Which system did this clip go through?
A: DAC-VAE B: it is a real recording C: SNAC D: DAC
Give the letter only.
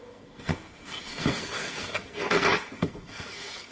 C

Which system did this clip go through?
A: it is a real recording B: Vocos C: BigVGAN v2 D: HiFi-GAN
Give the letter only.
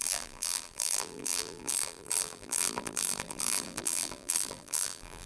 C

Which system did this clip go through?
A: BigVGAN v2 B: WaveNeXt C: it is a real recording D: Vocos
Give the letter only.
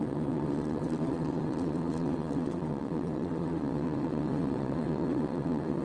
B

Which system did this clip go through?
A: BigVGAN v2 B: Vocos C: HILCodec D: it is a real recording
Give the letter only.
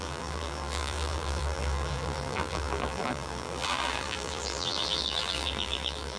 A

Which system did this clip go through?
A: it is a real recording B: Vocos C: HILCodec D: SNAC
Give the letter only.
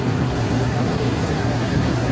D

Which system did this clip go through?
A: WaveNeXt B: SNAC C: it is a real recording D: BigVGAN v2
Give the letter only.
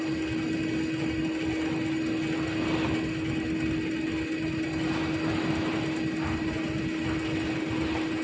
C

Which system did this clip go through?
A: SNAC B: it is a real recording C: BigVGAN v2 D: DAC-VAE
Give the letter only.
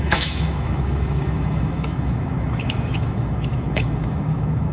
D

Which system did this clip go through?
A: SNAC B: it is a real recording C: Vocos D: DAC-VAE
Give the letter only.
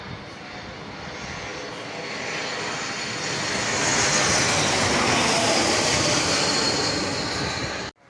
B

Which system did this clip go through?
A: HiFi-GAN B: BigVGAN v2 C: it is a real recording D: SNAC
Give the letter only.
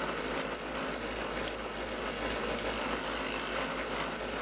C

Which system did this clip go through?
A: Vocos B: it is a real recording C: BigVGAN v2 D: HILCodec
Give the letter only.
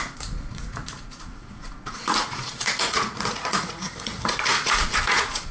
A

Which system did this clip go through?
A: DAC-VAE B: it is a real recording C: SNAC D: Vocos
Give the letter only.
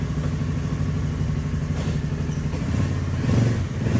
B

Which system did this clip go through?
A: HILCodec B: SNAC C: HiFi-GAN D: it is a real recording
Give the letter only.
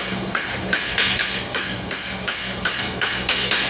B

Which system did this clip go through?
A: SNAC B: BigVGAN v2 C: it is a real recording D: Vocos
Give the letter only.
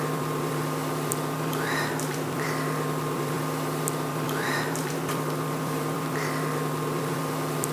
B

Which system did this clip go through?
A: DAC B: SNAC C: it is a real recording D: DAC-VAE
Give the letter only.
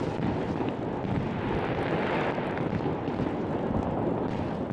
C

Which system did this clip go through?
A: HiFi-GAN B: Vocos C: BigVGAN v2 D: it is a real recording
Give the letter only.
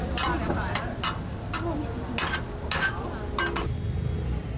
D